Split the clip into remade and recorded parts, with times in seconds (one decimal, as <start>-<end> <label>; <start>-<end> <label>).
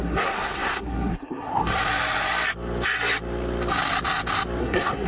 0.0-1.5 remade; 1.5-4.6 recorded; 4.6-5.1 remade